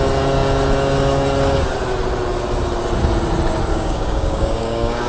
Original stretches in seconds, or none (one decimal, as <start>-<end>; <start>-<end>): 0.0-3.7